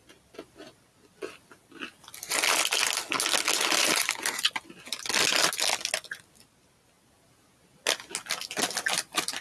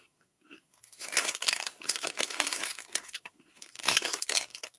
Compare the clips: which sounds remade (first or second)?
second